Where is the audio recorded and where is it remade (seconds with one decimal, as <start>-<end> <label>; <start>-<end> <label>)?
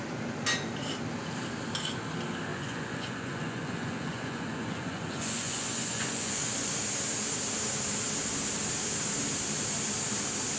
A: 0.0-2.5 recorded; 2.5-6.7 remade; 6.7-10.6 recorded